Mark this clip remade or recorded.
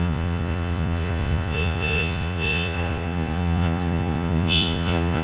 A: remade